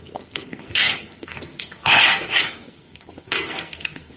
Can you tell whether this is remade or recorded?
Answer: remade